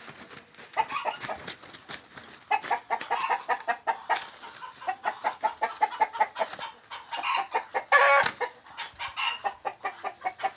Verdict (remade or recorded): recorded